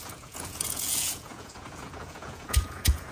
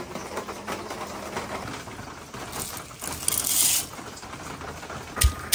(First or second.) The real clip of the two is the second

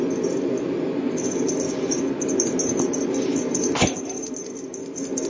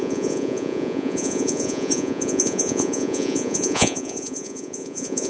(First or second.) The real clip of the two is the first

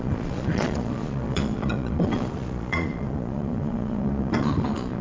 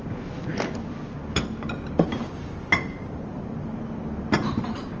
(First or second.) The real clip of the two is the second